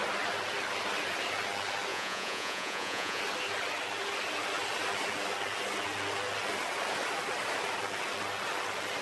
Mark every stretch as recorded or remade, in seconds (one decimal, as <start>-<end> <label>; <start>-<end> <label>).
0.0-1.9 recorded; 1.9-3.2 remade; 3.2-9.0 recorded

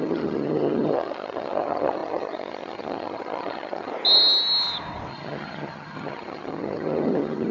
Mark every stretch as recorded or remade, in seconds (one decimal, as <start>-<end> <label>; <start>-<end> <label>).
0.0-3.9 remade; 3.9-5.1 recorded; 5.1-7.5 remade

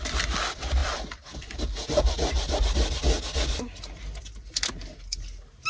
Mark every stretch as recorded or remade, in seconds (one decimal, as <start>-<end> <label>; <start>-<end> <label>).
0.0-5.7 recorded

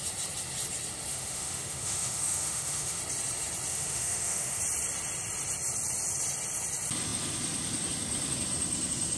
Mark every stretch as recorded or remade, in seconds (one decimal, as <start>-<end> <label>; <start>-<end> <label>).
0.0-1.1 recorded; 1.1-3.0 remade; 3.0-3.7 recorded; 3.7-4.6 remade; 4.6-9.2 recorded

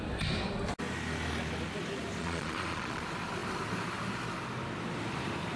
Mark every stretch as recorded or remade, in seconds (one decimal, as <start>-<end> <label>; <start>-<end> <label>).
0.0-2.2 recorded; 2.2-3.0 remade; 3.0-5.6 recorded

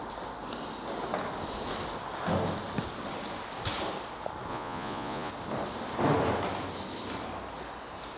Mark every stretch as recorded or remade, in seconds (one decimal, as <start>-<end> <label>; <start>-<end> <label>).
0.0-4.5 recorded; 4.5-5.3 remade; 5.3-8.2 recorded

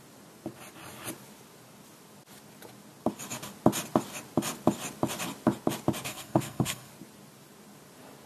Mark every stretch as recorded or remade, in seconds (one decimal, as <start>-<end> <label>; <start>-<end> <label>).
0.0-6.1 recorded; 6.1-6.9 remade; 6.9-8.3 recorded

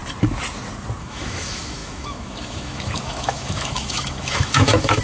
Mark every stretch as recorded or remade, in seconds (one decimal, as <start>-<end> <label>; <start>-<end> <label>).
0.0-1.0 recorded; 1.0-5.0 remade